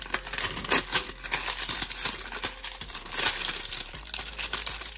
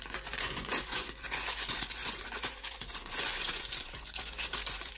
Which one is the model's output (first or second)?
second